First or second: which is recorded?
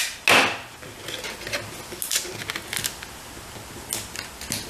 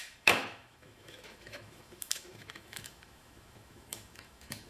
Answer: first